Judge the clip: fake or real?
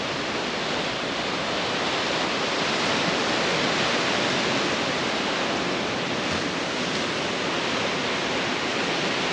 real